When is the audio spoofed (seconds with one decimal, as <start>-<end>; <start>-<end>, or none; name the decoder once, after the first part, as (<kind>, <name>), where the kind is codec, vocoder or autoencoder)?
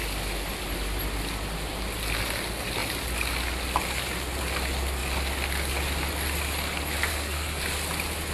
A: 7.1-7.6 (codec, SNAC)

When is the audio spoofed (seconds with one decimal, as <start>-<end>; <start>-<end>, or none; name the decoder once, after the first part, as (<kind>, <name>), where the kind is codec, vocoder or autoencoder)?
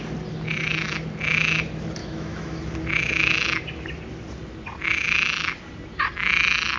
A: 2.0-2.6 (autoencoder, DAC-VAE)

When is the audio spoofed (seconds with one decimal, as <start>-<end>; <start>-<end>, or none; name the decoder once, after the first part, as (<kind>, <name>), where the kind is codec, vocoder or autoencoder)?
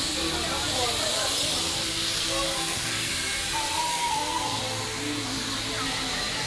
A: 1.9-3.1 (codec, SNAC); 3.9-4.6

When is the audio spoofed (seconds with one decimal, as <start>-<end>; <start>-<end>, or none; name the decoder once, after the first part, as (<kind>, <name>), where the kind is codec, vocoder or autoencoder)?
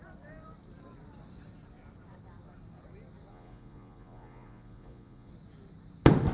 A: 3.3-5.3 (vocoder, Vocos)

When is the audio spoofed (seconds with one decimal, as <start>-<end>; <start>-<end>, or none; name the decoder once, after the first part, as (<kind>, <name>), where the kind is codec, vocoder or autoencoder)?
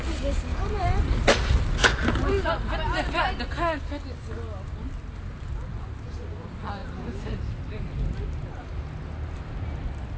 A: 0.5-1.5 (vocoder, BigVGAN v2)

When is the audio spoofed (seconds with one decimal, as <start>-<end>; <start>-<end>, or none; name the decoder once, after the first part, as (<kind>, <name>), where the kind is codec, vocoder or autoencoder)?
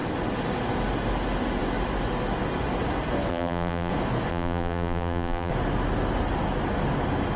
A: 3.3-3.9 (vocoder, BigVGAN v2); 4.3-5.5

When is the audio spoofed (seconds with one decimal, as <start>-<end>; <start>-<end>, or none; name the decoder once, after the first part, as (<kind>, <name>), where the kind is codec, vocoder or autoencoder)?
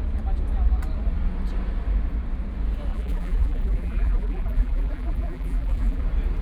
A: 2.9-6.0 (vocoder, BigVGAN v2)